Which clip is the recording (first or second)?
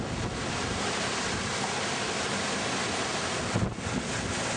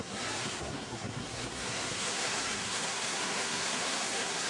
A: first